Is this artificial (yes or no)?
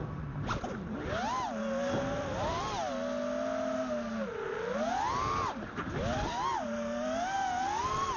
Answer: no